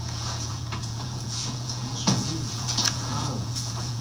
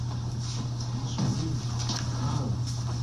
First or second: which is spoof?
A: first